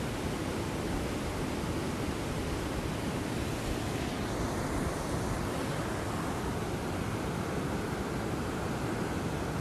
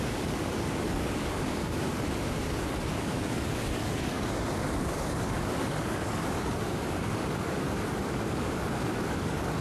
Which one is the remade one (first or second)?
second